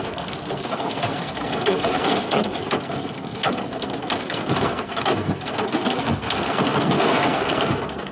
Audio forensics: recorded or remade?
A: remade